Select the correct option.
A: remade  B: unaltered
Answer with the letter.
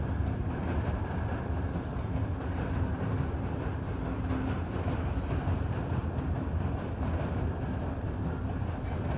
B